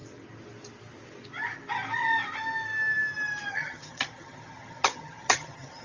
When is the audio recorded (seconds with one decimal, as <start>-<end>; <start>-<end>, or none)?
0.0-3.5